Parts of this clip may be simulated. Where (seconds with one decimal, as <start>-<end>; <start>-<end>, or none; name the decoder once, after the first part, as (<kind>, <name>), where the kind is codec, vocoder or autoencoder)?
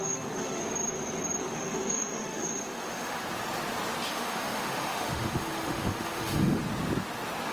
0.0-0.6 (autoencoder, DAC-VAE); 1.4-3.2; 4.1-6.6